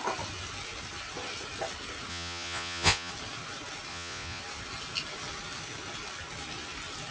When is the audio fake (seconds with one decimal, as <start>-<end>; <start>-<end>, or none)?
2.1-3.1; 3.9-4.4